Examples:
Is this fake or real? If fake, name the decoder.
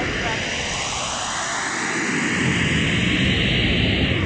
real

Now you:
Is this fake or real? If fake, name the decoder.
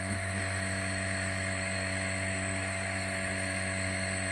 fake, autoencoder, DAC-VAE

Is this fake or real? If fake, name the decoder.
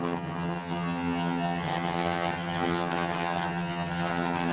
fake, vocoder, HiFi-GAN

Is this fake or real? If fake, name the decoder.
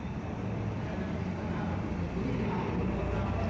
fake, vocoder, BigVGAN v2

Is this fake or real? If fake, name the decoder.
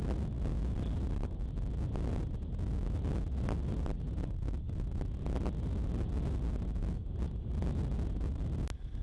real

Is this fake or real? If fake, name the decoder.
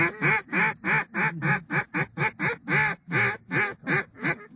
real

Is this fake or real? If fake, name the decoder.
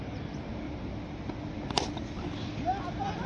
real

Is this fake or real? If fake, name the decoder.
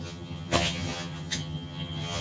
fake, vocoder, HiFi-GAN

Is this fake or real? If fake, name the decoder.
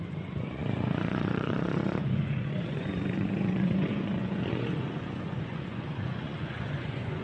fake, vocoder, Vocos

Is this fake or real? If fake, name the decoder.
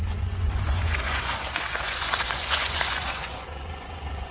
fake, vocoder, Vocos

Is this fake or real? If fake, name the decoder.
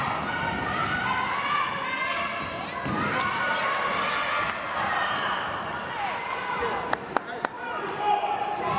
real